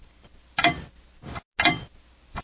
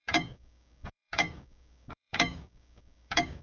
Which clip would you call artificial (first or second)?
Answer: second